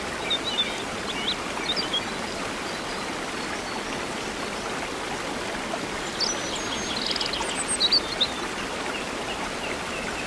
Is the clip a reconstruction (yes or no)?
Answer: no